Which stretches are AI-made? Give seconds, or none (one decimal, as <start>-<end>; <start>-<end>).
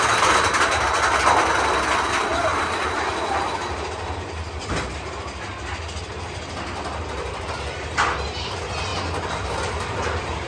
none